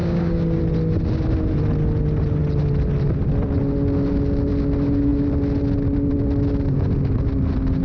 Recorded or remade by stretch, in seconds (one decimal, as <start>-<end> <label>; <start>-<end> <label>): 0.0-0.6 remade; 0.6-7.8 recorded

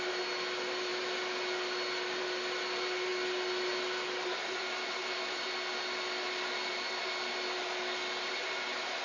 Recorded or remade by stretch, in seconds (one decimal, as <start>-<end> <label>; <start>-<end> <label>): 0.0-9.0 recorded

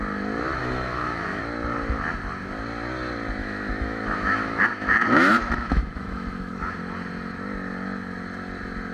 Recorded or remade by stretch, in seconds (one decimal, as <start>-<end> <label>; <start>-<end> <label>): 0.0-0.6 recorded; 0.6-1.4 remade; 1.4-3.4 recorded; 3.4-6.5 remade; 6.5-8.9 recorded

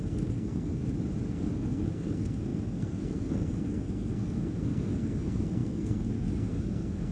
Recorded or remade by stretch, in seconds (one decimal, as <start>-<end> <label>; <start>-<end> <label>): 0.0-0.8 remade; 0.8-1.3 recorded; 1.3-7.1 remade

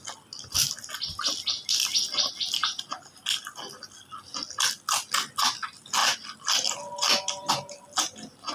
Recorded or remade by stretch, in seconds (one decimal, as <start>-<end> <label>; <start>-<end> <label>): 0.0-8.5 recorded

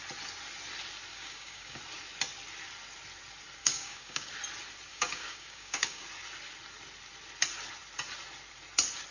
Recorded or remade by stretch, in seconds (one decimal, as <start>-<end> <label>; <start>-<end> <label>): 0.0-1.1 recorded; 1.1-1.8 remade; 1.8-3.6 recorded; 3.6-4.3 remade; 4.3-4.9 recorded; 4.9-6.0 remade; 6.0-9.1 recorded

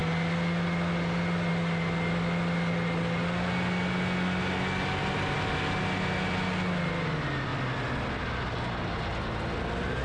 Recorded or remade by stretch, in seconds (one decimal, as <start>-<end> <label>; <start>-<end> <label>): 0.0-10.0 recorded

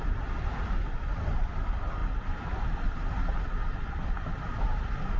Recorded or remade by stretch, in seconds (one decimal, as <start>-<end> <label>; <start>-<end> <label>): 0.0-5.2 recorded